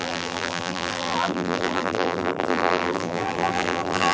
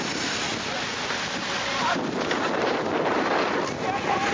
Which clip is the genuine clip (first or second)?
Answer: second